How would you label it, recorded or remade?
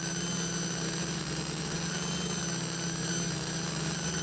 recorded